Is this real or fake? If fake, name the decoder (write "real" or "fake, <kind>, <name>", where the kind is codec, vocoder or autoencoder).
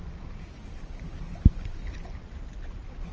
real